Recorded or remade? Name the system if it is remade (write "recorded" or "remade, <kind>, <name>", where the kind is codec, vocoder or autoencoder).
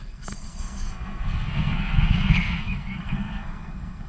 remade, codec, SNAC